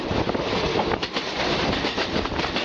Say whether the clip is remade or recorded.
recorded